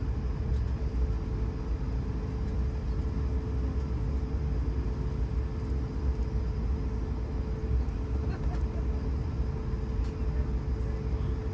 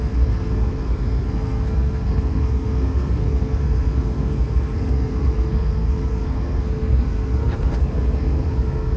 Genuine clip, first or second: first